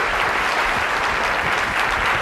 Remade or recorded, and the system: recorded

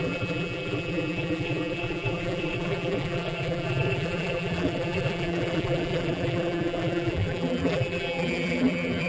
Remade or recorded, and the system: remade, vocoder, BigVGAN v2